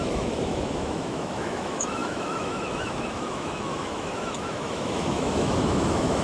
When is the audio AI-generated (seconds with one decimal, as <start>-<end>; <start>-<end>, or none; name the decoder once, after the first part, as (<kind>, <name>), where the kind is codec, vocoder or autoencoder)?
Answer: 0.0-6.2 (autoencoder, DAC-VAE)